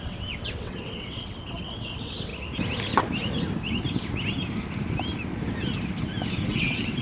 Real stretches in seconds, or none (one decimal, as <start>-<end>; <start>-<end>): 2.3-6.5

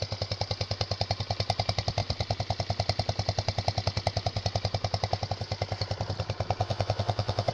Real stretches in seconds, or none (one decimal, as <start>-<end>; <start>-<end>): 0.0-6.6

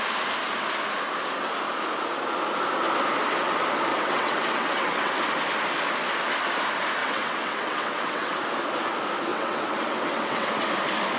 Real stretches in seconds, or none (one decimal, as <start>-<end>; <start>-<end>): 0.0-3.9; 5.1-7.0; 8.4-9.3; 10.5-11.2